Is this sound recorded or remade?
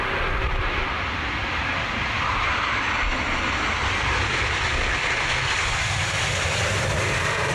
recorded